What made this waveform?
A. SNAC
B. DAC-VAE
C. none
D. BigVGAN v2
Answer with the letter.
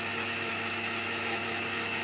B